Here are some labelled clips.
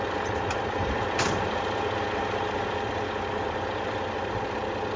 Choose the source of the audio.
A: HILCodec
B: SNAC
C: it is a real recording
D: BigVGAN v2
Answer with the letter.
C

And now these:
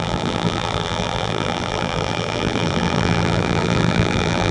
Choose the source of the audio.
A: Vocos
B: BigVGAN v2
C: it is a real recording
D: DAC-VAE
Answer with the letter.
B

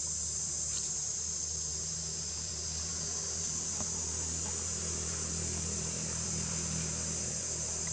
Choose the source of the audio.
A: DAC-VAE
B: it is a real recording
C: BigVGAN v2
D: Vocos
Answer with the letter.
C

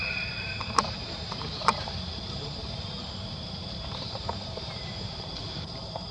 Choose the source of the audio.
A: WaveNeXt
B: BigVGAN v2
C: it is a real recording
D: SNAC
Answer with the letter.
B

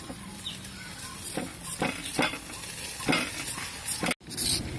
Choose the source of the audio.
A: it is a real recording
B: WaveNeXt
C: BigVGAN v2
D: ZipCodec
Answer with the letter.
A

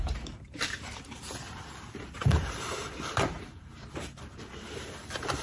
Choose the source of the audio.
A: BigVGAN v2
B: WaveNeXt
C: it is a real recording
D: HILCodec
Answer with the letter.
A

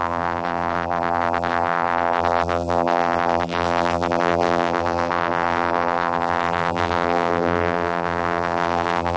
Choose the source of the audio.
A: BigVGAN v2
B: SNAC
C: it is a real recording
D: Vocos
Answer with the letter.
A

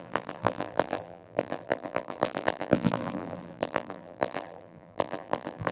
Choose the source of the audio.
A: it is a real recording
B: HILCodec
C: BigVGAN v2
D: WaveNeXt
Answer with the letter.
C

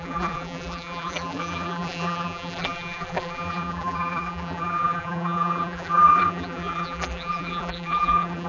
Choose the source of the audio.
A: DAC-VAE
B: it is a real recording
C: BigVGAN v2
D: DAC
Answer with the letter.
C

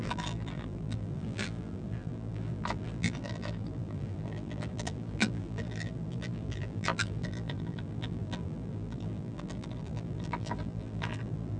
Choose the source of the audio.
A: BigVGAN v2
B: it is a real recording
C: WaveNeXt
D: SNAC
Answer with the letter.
A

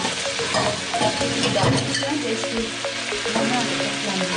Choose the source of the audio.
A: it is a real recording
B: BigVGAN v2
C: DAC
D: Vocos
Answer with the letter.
A